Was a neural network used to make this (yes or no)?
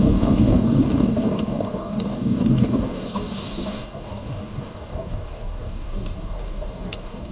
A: yes